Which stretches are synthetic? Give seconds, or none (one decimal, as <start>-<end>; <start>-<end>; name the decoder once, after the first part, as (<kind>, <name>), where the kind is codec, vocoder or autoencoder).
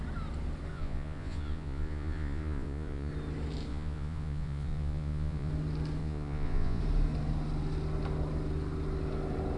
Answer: 0.7-3.1 (vocoder, Vocos); 3.7-5.5; 6.0-6.8